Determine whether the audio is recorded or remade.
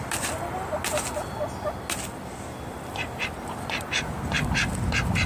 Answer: recorded